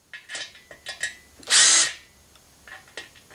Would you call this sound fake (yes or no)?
no